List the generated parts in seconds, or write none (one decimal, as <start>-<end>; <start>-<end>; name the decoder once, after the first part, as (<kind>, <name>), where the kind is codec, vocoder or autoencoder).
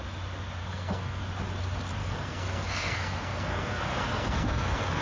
0.6-1.2 (codec, SNAC); 2.0-5.0